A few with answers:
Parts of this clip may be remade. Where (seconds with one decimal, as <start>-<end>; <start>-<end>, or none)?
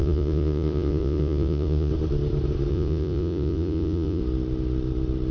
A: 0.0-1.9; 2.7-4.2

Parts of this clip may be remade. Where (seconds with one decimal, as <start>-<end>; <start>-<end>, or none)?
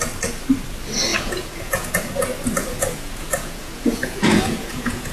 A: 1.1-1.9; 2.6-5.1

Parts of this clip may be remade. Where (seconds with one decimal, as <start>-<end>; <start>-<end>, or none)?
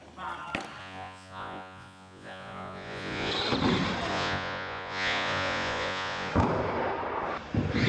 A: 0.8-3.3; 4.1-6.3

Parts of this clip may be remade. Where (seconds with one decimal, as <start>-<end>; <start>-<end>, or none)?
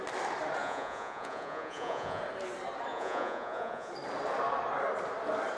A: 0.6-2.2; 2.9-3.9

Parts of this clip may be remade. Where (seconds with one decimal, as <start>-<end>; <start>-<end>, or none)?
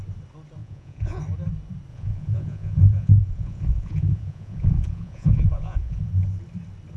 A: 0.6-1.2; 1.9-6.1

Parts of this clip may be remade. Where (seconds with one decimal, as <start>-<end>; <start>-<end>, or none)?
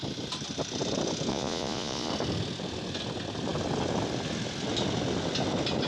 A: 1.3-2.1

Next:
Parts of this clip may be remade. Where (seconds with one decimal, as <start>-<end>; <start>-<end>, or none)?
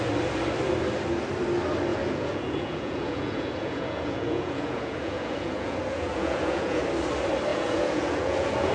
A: 1.9-6.8; 7.5-8.7